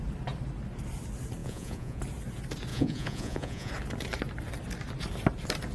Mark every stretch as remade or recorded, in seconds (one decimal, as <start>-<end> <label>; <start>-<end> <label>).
0.0-1.4 recorded; 1.4-2.0 remade; 2.0-2.7 recorded; 2.7-3.7 remade; 3.7-5.7 recorded